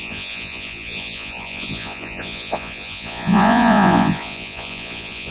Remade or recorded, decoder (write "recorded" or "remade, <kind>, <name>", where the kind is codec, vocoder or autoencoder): remade, vocoder, Vocos